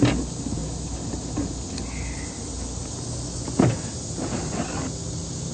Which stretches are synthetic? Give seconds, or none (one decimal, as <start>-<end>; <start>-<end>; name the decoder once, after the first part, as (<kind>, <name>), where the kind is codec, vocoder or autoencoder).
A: none